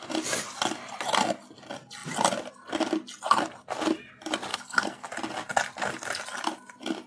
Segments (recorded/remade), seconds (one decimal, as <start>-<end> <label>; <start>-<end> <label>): 0.0-4.5 recorded; 4.5-5.1 remade; 5.1-7.1 recorded